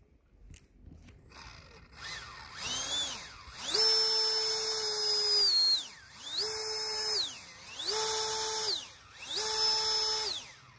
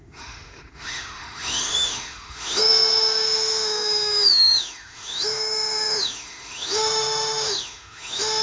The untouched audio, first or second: first